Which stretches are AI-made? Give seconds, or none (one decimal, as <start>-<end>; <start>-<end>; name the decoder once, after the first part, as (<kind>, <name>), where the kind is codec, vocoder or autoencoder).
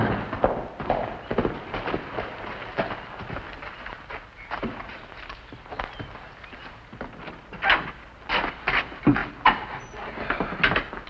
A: none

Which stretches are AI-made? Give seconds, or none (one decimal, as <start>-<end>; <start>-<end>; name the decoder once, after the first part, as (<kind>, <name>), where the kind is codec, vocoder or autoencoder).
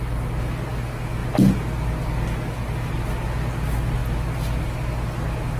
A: none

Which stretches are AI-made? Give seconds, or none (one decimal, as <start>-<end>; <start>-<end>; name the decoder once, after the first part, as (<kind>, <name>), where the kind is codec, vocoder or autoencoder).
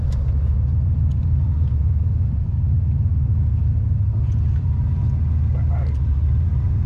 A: 0.0-5.0 (vocoder, BigVGAN v2); 6.0-6.9